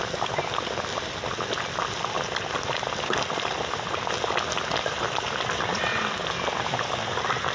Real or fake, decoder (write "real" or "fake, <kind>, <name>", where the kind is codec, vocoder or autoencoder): real